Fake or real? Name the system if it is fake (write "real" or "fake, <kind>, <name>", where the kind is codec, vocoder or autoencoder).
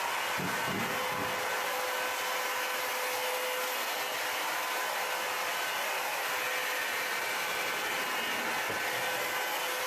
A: real